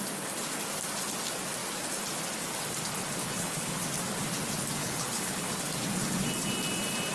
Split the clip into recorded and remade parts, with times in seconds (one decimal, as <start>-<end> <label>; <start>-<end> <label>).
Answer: 0.0-3.2 recorded; 3.2-3.8 remade; 3.8-4.8 recorded; 4.8-5.6 remade; 5.6-7.1 recorded